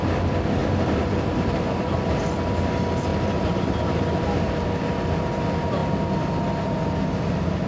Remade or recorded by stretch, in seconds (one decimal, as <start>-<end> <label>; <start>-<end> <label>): 0.0-0.6 recorded; 0.6-2.2 remade; 2.2-3.1 recorded; 3.1-4.0 remade; 4.0-7.7 recorded